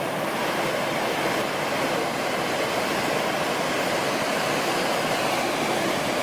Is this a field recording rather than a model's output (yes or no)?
yes